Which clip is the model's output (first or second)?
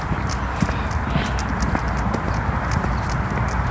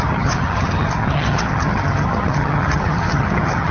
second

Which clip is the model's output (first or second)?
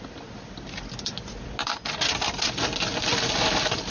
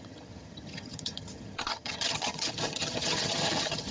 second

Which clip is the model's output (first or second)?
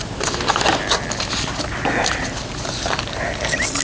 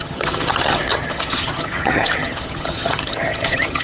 second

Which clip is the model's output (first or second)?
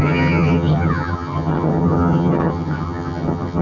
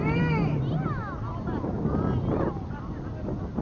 first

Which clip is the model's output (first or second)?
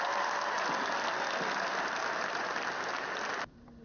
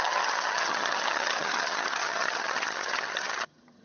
second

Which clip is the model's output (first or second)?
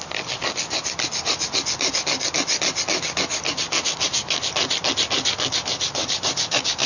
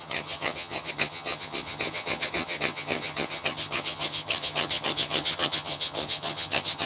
second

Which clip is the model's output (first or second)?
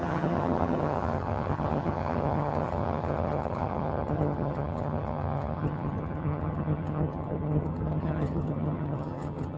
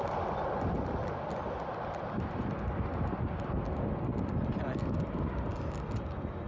first